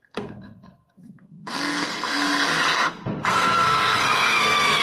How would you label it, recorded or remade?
remade